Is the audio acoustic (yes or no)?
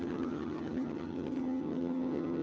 no